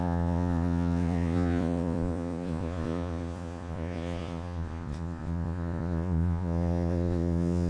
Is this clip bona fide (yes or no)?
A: no